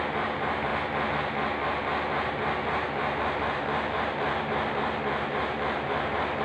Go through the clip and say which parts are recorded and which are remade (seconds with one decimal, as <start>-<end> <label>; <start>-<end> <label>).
0.0-0.7 remade; 0.7-2.1 recorded; 2.1-6.4 remade